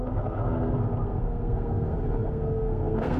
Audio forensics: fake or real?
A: fake